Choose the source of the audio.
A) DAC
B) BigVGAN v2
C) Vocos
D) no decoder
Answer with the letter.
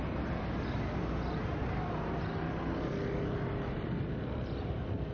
D